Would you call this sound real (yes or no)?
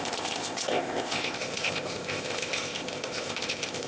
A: no